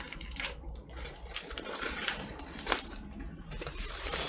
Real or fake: fake